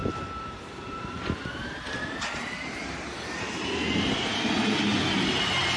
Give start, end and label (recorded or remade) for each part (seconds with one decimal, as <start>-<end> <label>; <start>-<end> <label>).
0.0-5.8 remade